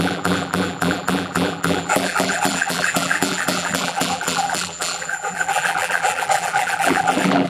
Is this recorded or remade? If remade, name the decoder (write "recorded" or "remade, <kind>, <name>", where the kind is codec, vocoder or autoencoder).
remade, vocoder, BigVGAN v2